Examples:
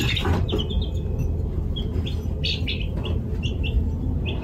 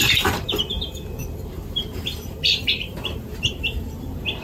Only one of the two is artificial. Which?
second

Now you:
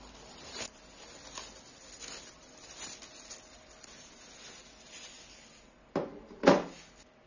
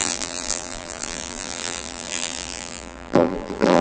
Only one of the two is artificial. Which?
second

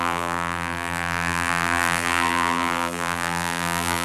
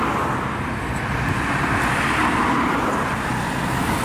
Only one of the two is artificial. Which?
first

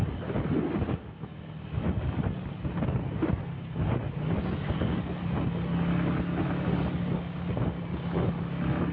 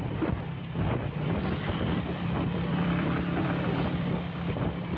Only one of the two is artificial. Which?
second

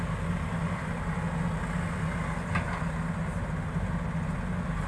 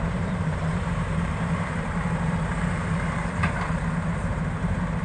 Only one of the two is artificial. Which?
second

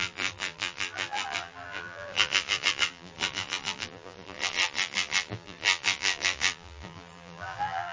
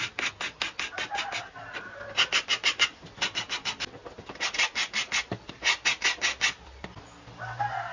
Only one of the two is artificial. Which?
first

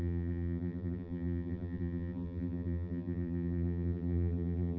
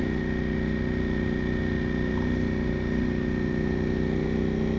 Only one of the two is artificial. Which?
first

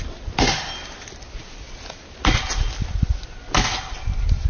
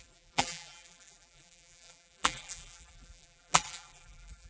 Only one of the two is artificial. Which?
second